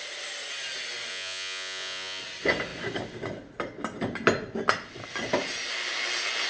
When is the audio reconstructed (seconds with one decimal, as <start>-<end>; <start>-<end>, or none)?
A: 1.1-2.2

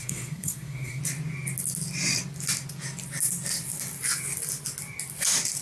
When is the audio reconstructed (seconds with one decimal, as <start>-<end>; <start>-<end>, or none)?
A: 0.0-1.0

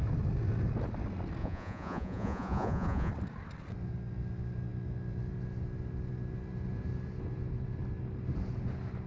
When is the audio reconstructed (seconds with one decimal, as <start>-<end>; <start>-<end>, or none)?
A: 1.4-3.1

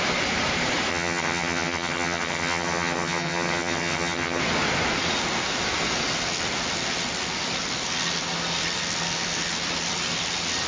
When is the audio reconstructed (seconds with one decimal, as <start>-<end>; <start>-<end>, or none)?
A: 0.9-4.4

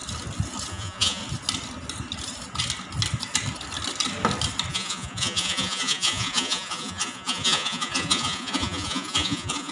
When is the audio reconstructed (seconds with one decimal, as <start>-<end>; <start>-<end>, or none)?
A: 0.7-1.2; 4.7-9.7